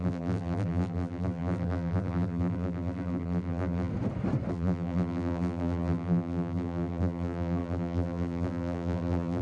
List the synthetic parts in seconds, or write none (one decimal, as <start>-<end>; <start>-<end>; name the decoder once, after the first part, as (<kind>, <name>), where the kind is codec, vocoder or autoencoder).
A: 0.0-3.9 (vocoder, BigVGAN v2); 4.5-9.4